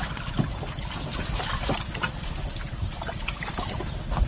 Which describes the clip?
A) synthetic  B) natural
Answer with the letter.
B